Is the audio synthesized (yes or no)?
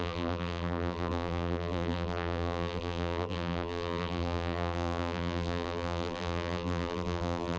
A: yes